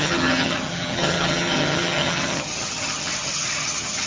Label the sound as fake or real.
fake